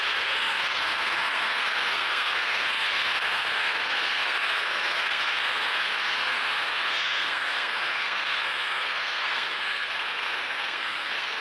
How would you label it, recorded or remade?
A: remade